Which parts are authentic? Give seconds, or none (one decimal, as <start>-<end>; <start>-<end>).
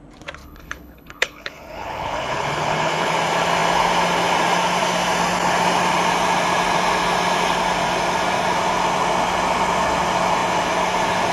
0.0-0.4; 3.1-11.3